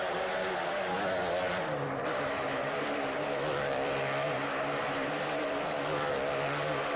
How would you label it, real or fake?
real